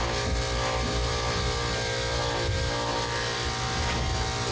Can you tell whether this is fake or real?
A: real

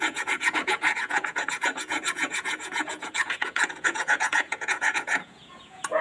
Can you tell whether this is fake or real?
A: fake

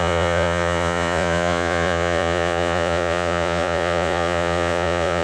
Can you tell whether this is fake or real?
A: fake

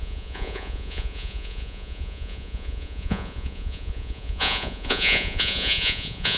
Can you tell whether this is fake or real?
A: fake